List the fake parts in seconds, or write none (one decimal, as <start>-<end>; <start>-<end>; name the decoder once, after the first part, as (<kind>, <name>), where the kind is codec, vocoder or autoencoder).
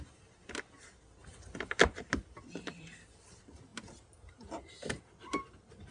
none